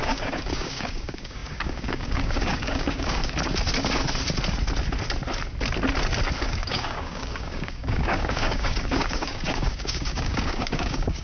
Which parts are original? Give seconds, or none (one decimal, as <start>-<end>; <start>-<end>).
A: 3.2-6.4

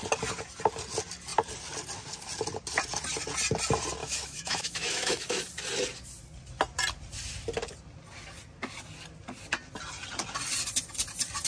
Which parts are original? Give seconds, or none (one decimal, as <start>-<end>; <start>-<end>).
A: 0.0-4.0; 5.4-11.5

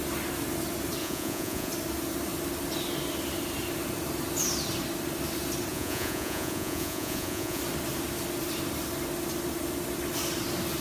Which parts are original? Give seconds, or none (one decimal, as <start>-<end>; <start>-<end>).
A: 0.0-1.0; 1.7-5.7; 7.6-10.8

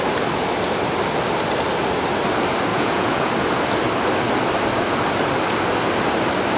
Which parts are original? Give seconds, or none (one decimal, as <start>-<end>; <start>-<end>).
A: 0.0-2.7; 3.3-6.6

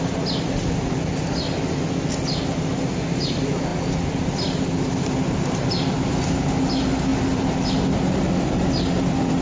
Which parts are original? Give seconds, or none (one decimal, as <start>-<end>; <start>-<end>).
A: 0.0-9.4

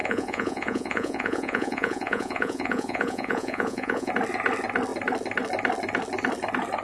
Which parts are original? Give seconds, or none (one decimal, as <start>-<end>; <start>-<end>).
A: 4.1-6.8

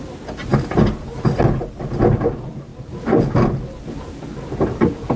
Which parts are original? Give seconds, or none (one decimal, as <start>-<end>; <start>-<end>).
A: 0.0-5.2

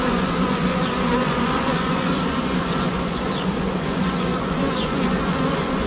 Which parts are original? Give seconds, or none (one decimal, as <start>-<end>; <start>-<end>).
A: none